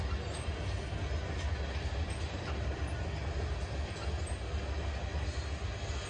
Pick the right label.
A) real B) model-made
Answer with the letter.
A